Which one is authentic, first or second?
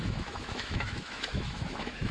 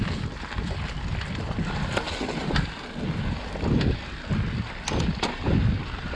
second